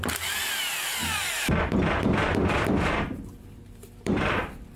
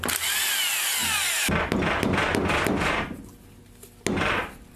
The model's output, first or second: first